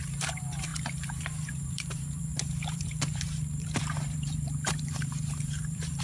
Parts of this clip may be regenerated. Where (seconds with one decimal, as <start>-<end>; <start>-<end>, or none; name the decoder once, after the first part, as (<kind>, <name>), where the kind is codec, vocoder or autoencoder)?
0.0-0.7 (vocoder, BigVGAN v2); 1.7-6.0